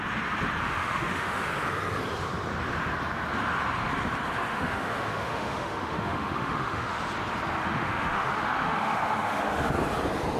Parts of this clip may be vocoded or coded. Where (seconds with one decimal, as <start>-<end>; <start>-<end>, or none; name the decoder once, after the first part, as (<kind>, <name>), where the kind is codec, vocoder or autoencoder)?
0.6-1.5 (autoencoder, DAC-VAE); 4.5-7.0; 7.6-9.7